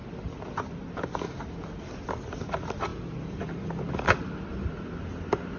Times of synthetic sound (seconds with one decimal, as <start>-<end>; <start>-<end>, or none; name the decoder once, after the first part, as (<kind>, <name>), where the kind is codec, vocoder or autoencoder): none